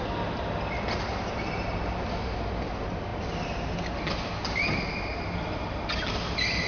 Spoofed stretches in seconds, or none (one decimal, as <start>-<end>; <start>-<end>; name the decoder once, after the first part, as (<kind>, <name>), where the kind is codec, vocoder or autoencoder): none